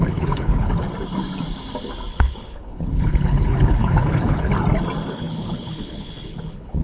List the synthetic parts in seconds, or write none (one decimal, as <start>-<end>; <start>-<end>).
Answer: 0.0-0.7; 2.1-4.5; 5.1-6.8